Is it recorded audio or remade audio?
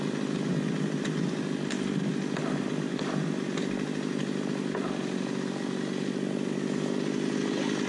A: recorded